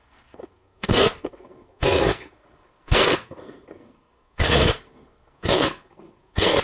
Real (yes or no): no